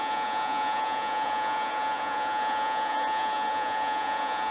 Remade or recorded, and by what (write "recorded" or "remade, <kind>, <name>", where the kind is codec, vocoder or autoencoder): remade, vocoder, Vocos